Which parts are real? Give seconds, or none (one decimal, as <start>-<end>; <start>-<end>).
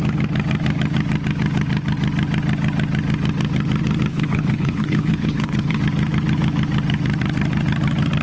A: 0.0-4.1; 5.8-8.2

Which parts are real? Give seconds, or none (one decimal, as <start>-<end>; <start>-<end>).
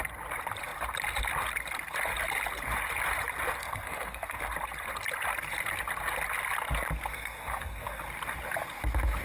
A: 0.0-3.6; 4.4-7.1; 8.0-9.2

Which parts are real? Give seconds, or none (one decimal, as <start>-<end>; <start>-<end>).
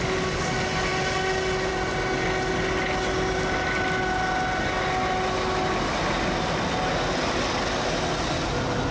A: 0.0-8.9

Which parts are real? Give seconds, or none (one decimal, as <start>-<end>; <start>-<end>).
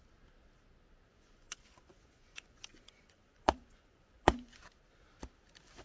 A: 0.0-1.1; 4.6-5.8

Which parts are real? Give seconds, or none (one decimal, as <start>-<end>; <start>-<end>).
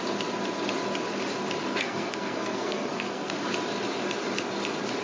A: 0.0-1.7; 3.3-5.0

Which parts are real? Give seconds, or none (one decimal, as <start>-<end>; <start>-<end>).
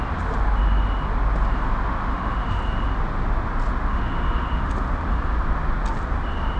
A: 0.0-2.1; 2.6-3.9; 4.7-6.6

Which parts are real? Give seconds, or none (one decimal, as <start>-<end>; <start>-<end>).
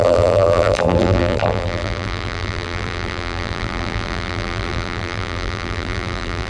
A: none